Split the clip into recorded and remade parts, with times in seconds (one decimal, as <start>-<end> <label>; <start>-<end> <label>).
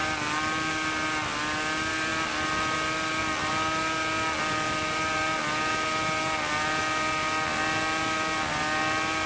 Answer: 0.0-2.1 recorded; 2.1-3.5 remade; 3.5-9.3 recorded